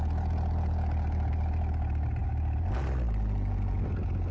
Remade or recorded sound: recorded